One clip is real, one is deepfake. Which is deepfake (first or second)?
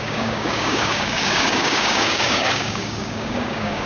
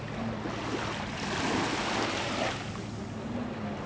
first